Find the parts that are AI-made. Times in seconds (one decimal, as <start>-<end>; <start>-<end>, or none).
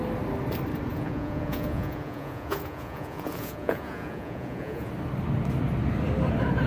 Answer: 0.9-4.9